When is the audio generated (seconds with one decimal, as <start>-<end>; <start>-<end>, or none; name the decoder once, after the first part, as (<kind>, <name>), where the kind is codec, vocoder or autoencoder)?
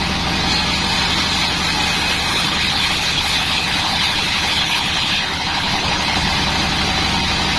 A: 2.3-6.3 (codec, HILCodec)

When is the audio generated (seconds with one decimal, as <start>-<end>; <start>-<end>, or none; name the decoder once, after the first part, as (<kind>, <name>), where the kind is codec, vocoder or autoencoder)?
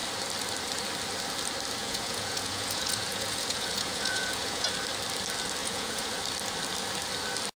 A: 1.8-4.7 (vocoder, Vocos); 5.6-6.1